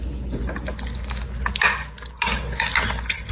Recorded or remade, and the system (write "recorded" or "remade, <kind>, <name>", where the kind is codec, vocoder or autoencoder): recorded